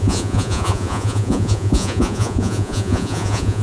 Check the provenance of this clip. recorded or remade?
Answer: remade